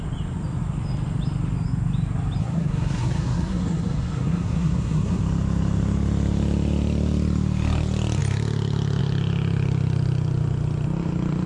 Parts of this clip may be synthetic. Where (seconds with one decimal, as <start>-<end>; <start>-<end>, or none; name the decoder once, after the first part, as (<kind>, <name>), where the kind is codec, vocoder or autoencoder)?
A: 2.4-5.2 (codec, SNAC)